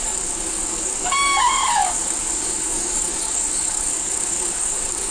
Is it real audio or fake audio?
fake